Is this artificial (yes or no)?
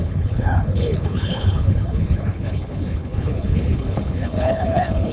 yes